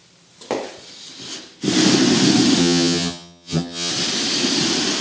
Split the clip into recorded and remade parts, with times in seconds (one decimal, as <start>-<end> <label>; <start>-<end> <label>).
0.0-2.6 recorded; 2.6-3.9 remade; 3.9-5.0 recorded

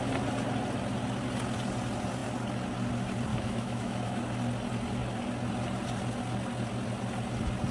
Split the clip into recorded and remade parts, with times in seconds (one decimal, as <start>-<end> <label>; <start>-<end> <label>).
0.0-3.3 recorded; 3.3-4.2 remade; 4.2-7.7 recorded

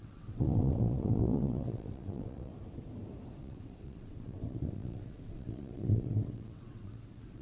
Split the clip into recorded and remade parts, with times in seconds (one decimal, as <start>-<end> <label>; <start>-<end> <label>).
0.0-2.5 remade; 2.5-3.4 recorded; 3.4-7.4 remade

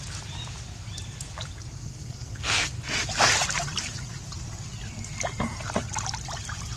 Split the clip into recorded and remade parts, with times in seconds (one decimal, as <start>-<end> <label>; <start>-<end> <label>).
0.0-1.8 recorded; 1.8-2.7 remade; 2.7-6.8 recorded

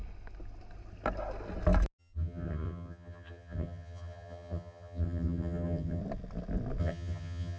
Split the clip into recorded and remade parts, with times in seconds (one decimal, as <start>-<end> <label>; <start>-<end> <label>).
0.0-2.0 recorded; 2.0-6.0 remade; 6.0-6.8 recorded; 6.8-7.6 remade

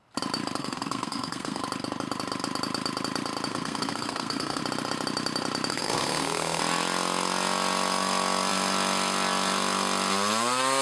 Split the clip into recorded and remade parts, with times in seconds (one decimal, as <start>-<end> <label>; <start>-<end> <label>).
0.0-0.6 recorded; 0.6-1.6 remade; 1.6-3.5 recorded; 3.5-4.6 remade; 4.6-5.7 recorded; 5.7-6.6 remade; 6.6-10.8 recorded

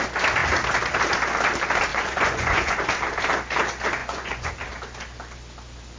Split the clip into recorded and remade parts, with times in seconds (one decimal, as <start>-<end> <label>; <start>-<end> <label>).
0.0-1.9 recorded; 1.9-2.8 remade; 2.8-4.0 recorded; 4.0-4.5 remade; 4.5-6.0 recorded